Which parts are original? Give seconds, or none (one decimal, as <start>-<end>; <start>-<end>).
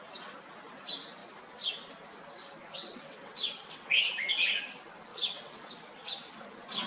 0.0-2.7; 4.6-5.1; 5.7-6.9